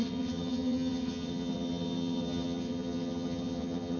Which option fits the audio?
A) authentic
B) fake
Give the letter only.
B